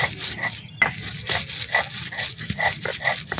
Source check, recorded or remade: recorded